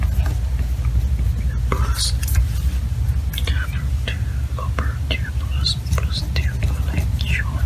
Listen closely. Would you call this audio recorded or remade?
recorded